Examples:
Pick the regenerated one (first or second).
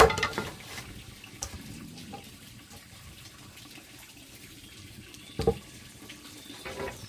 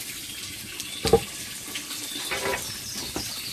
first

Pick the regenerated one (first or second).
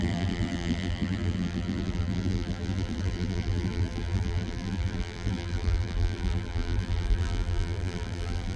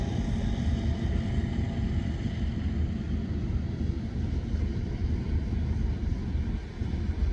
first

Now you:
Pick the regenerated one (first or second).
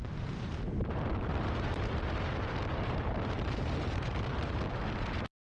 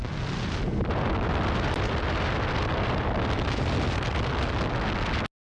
first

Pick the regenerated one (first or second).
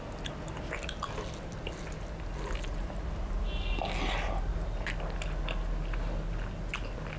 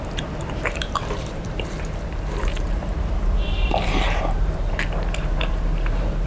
second